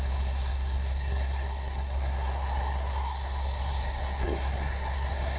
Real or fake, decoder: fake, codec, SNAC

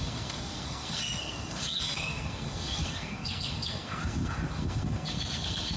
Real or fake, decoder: fake, codec, SNAC